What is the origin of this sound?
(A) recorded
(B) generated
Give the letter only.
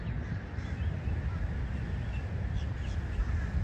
A